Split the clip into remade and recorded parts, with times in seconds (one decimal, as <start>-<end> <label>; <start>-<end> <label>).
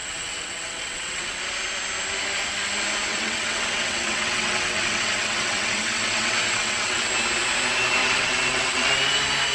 0.0-1.4 remade; 1.4-3.1 recorded; 3.1-7.1 remade; 7.1-8.0 recorded; 8.0-8.9 remade; 8.9-9.5 recorded